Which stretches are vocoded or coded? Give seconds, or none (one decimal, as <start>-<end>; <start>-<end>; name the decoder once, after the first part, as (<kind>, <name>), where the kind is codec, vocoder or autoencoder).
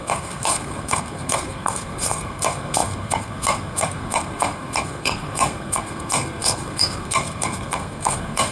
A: 0.0-8.5 (codec, SNAC)